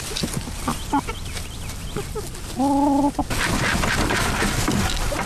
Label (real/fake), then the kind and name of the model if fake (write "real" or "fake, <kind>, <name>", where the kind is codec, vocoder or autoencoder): real